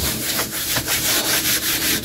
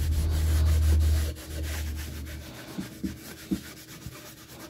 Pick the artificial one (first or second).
first